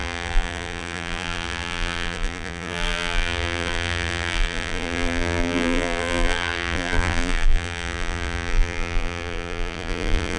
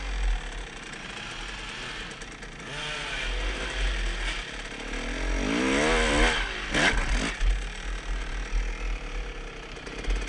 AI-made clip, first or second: first